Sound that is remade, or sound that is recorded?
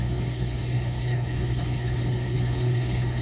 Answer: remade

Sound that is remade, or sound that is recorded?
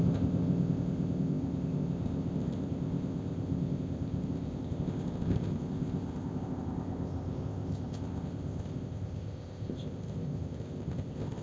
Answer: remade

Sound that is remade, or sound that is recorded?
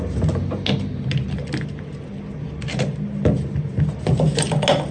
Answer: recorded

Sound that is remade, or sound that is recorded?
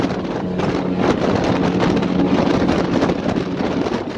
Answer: recorded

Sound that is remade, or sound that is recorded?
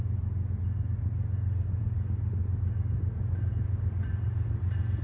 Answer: recorded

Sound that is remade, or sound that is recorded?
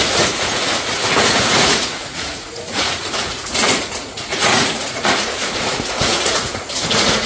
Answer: remade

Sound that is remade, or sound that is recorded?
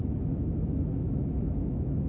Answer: remade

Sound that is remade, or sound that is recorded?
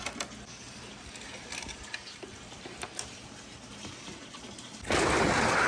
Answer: recorded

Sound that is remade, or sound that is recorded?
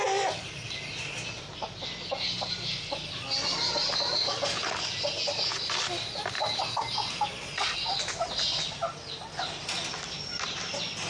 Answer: recorded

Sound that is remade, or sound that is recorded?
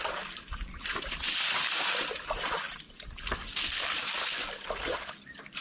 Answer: recorded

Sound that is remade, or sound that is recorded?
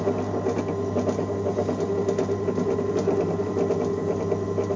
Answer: recorded